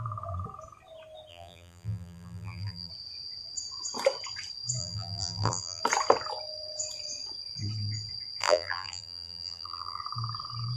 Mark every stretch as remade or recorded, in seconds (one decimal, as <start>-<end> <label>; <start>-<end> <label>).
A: 0.0-1.3 recorded; 1.3-2.9 remade; 2.9-4.8 recorded; 4.8-5.8 remade; 5.8-8.4 recorded; 8.4-10.0 remade; 10.0-10.8 recorded